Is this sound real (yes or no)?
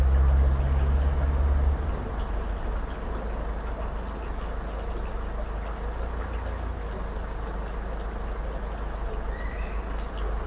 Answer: yes